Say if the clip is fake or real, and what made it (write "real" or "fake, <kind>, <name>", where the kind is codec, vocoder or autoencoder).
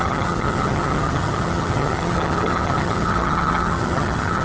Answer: fake, vocoder, HiFi-GAN